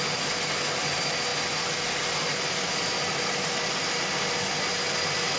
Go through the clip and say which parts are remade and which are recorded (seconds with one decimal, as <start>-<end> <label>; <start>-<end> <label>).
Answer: 0.0-5.4 recorded

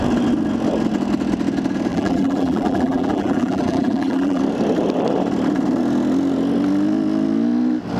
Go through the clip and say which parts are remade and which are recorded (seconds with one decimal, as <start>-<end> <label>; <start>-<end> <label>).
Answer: 0.0-1.9 recorded; 1.9-4.4 remade; 4.4-8.0 recorded

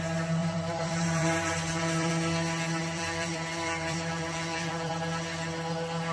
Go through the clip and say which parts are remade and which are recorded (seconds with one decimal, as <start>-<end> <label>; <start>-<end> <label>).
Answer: 0.0-0.4 recorded; 0.4-2.1 remade; 2.1-2.8 recorded; 2.8-4.9 remade; 4.9-6.1 recorded

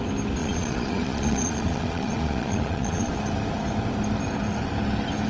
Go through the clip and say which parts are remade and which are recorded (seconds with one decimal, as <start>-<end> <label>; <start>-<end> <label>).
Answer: 0.0-0.4 recorded; 0.4-3.1 remade; 3.1-5.3 recorded

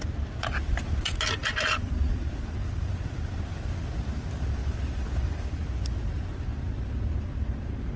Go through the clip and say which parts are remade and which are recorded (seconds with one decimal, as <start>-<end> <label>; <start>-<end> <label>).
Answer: 0.0-1.4 recorded; 1.4-3.4 remade; 3.4-4.6 recorded; 4.6-5.5 remade; 5.5-8.0 recorded

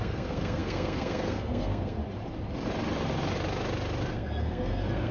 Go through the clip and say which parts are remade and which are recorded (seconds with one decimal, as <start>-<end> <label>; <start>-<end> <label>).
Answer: 0.0-2.0 remade; 2.0-4.1 recorded; 4.1-5.1 remade

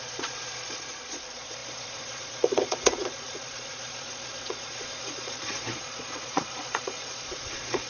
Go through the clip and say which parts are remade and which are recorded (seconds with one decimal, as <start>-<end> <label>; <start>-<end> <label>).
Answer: 0.0-7.9 remade

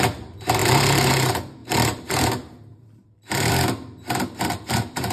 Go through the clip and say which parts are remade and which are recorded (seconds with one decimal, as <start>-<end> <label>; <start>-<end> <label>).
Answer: 0.0-0.6 recorded; 0.6-1.1 remade; 1.1-1.6 recorded; 1.6-2.2 remade; 2.2-2.7 recorded; 2.7-3.5 remade; 3.5-5.1 recorded